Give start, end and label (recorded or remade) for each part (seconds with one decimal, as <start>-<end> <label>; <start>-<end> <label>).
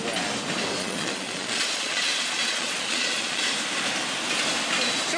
0.0-0.8 recorded; 0.8-3.5 remade; 3.5-5.2 recorded